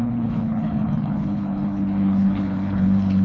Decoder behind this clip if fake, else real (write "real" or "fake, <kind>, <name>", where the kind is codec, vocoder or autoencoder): fake, codec, HILCodec